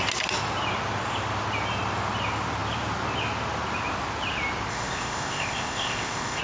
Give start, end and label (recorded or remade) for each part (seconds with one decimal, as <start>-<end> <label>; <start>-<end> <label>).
0.0-4.7 recorded; 4.7-6.4 remade